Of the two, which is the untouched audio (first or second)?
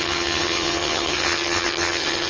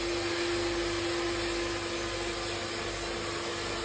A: second